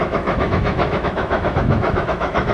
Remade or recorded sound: remade